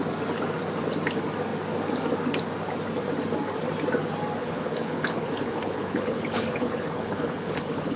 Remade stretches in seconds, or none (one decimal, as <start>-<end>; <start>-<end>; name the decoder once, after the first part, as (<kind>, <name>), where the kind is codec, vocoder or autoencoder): 4.4-8.0 (codec, HILCodec)